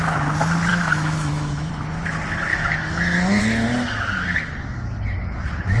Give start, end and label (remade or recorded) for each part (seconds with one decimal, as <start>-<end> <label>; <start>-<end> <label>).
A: 0.0-0.7 recorded; 0.7-1.7 remade; 1.7-2.5 recorded; 2.5-3.4 remade; 3.4-5.8 recorded